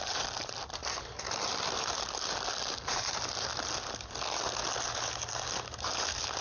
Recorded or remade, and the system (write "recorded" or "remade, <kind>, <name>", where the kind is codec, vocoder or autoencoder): recorded